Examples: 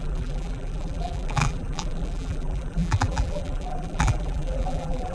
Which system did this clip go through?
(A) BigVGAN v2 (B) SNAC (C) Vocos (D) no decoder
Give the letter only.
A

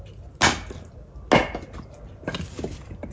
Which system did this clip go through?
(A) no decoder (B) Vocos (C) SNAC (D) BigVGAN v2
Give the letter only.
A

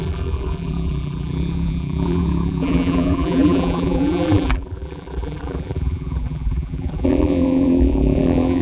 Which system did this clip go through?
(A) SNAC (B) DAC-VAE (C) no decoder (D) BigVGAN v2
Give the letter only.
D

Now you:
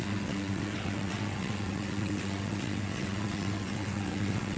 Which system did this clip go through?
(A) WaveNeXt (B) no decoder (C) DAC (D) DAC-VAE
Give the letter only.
A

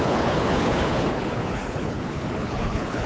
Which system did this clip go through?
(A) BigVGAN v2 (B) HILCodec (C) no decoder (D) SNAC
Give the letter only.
B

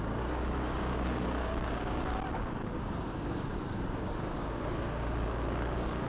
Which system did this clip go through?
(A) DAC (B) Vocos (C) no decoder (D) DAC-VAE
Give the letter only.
A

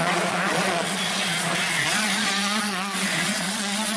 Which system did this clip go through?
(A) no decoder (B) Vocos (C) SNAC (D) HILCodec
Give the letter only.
B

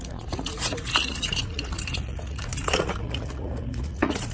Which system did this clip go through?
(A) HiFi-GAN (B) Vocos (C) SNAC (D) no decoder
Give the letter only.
B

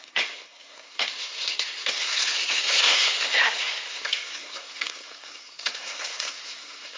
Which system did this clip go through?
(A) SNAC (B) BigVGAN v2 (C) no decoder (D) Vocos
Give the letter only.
A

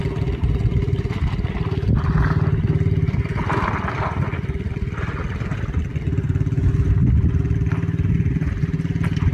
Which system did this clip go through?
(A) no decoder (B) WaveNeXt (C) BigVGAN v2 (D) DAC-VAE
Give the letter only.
A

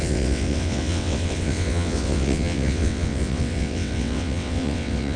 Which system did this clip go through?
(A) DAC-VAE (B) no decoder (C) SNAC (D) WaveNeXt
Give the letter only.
D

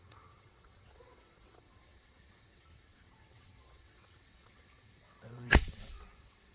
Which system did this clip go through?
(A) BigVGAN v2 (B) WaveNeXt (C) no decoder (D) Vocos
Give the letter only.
B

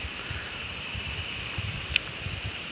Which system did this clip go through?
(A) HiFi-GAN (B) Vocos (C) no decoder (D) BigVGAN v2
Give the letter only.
C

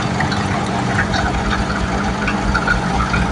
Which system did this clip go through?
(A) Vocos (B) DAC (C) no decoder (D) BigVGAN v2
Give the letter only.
A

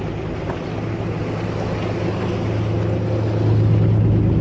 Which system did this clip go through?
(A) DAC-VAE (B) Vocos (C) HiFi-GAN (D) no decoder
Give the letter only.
D